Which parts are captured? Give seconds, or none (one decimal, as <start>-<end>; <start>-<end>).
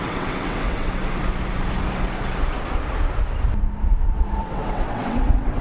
1.0-4.4